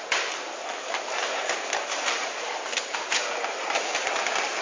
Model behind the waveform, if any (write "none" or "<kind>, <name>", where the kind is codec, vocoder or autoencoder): vocoder, BigVGAN v2